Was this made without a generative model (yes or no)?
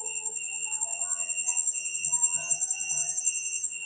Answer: no